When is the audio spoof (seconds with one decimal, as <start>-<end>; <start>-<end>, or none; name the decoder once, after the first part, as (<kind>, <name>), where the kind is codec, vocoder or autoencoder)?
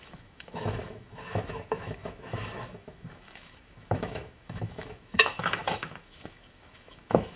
0.0-7.4 (autoencoder, DAC-VAE)